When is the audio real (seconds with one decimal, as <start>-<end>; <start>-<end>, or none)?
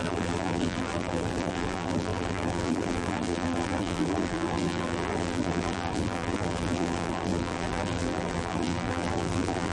none